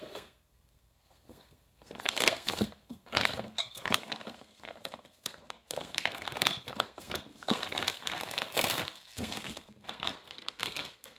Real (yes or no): no